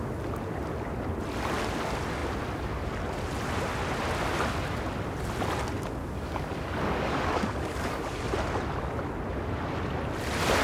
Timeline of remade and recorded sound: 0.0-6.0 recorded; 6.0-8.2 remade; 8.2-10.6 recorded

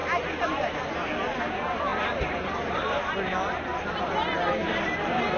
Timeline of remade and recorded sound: 0.0-5.4 recorded

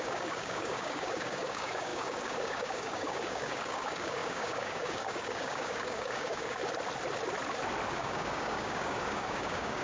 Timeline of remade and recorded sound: 0.0-6.6 remade; 6.6-7.9 recorded; 7.9-9.8 remade

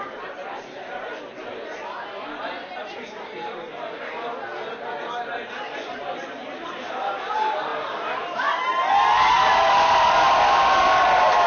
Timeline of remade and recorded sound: 0.0-11.5 recorded

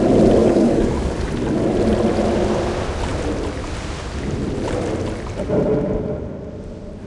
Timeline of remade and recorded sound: 0.0-0.4 recorded; 0.4-1.3 remade; 1.3-7.1 recorded

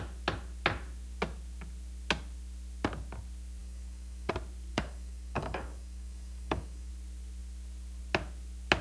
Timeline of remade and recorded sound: 0.0-3.6 recorded; 3.6-4.3 remade; 4.3-4.7 recorded; 4.7-6.9 remade; 6.9-8.8 recorded